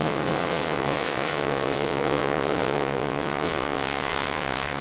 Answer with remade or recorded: remade